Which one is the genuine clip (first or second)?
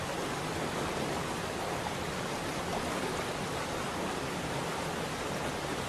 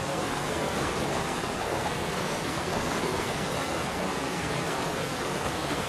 first